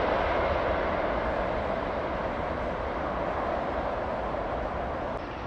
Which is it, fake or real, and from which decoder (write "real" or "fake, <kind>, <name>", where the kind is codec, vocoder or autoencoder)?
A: real